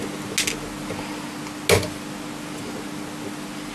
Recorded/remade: recorded